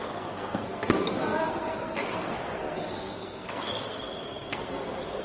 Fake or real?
fake